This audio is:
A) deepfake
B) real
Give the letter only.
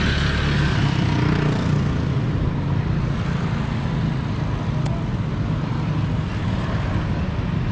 B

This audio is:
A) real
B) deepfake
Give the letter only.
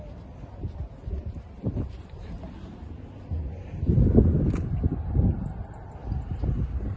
A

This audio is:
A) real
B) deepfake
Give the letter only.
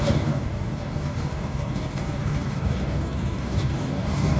B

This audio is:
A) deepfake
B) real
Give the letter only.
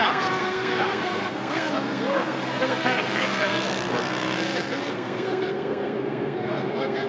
A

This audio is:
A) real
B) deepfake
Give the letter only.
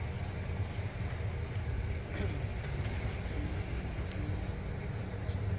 A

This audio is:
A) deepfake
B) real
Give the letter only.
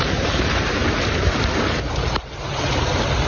A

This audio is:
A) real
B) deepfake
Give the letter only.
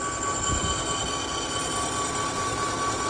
A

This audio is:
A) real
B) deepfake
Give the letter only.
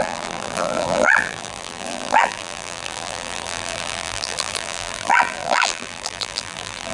B